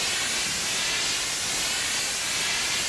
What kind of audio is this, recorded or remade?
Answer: recorded